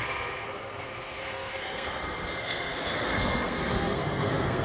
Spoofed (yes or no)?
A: yes